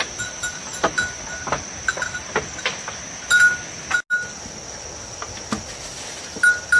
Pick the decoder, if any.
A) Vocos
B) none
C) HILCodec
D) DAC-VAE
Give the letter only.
B